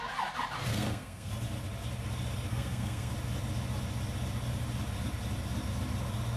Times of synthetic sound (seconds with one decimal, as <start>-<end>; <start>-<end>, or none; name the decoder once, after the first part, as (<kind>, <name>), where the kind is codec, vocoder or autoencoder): 0.7-1.3 (codec, SNAC); 2.5-3.1